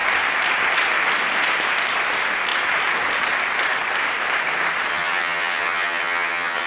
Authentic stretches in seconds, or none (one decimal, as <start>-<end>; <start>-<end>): 0.0-4.9